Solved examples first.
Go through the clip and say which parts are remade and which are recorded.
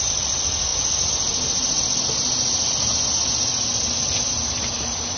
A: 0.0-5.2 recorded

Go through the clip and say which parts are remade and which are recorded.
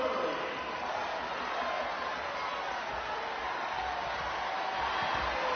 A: 0.0-5.6 recorded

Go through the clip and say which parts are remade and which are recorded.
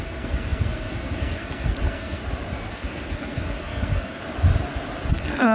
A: 0.0-2.2 remade; 2.2-2.7 recorded; 2.7-4.2 remade; 4.2-5.1 recorded; 5.1-5.5 remade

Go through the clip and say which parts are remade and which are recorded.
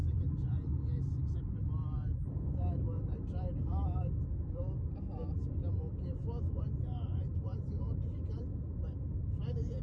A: 0.0-5.4 remade; 5.4-9.8 recorded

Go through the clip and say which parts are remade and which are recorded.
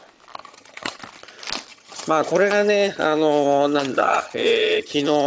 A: 0.0-0.4 recorded; 0.4-1.0 remade; 1.0-1.7 recorded; 1.7-5.3 remade